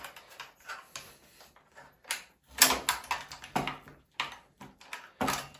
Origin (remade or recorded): recorded